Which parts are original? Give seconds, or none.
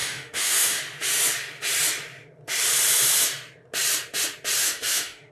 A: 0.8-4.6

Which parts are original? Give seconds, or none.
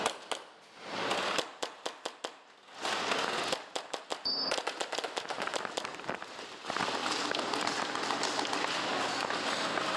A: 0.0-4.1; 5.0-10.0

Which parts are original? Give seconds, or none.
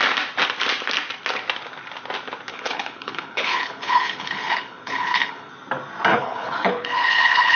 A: 0.0-2.5; 5.5-6.1